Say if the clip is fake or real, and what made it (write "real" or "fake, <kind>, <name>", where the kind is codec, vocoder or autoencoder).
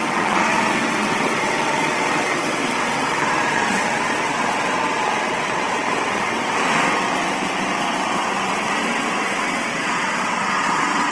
fake, vocoder, WaveNeXt